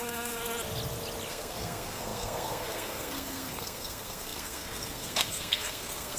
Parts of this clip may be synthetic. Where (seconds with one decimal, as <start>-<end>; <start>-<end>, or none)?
0.0-0.4; 1.3-6.2